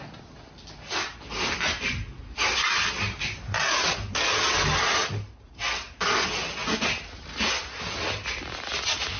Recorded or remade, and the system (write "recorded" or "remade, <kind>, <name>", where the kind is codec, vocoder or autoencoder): recorded